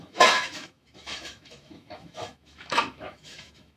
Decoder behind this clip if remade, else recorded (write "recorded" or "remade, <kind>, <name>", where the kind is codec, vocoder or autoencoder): remade, autoencoder, DAC-VAE